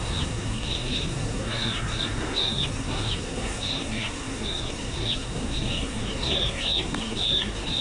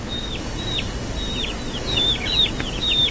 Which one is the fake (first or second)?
first